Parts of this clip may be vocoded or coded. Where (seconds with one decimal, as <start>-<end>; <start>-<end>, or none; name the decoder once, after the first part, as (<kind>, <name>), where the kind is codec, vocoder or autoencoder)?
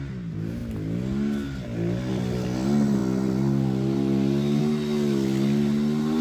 none